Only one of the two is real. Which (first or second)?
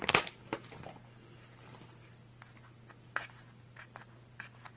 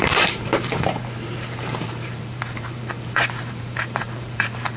first